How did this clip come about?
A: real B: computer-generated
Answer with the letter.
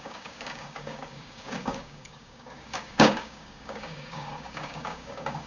B